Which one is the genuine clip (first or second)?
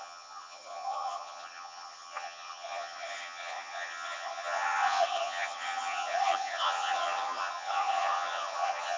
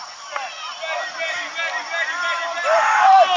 second